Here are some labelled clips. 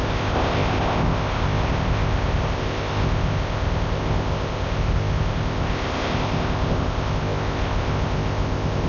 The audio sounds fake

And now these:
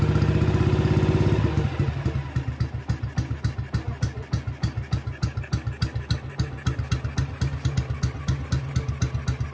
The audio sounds real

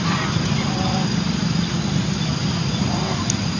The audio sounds real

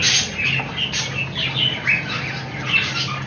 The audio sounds real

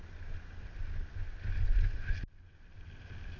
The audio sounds real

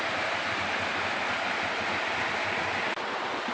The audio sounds real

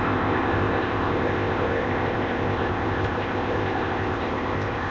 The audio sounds fake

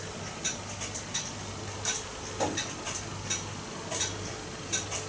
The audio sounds real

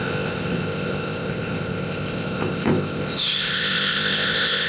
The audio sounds fake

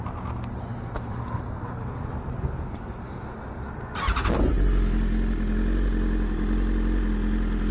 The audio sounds real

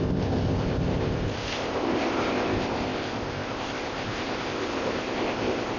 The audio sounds fake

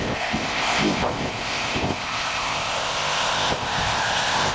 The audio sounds fake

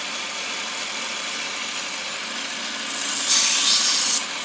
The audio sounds real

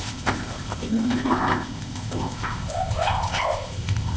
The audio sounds fake